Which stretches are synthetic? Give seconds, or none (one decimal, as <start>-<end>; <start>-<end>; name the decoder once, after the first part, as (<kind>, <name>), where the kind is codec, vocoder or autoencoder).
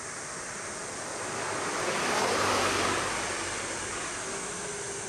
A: none